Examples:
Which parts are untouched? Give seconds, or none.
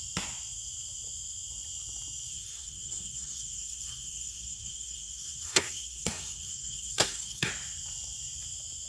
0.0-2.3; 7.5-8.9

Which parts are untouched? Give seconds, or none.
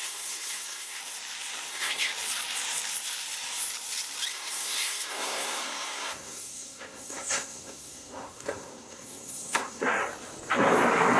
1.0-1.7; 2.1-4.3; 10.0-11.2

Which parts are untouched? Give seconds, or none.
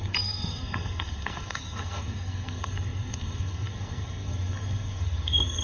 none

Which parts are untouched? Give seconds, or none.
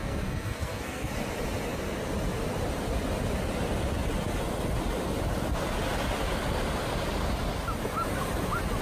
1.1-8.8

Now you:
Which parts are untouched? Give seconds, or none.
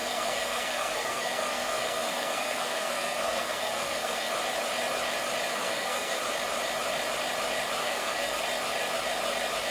4.3-5.5; 6.2-7.8; 8.4-9.7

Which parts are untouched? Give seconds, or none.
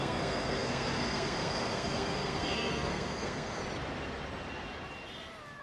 3.6-5.6